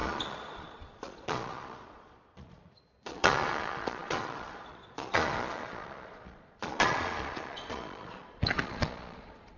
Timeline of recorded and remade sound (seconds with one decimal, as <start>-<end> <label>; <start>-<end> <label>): 0.0-9.6 remade